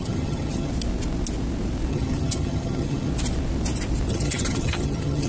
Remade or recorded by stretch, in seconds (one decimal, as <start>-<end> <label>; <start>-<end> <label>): 0.0-0.7 remade; 0.7-1.9 recorded; 1.9-3.1 remade; 3.1-4.1 recorded; 4.1-5.3 remade